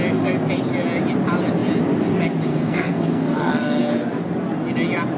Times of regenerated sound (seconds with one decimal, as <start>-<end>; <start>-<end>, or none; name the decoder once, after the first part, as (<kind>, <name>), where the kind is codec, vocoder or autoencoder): 2.5-3.8 (codec, SNAC)